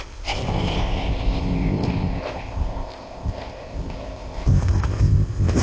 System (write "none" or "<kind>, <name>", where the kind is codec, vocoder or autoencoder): codec, ZipCodec